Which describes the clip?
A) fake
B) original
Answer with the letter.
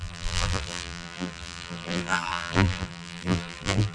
A